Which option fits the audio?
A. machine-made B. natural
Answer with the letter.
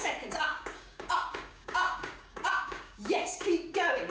A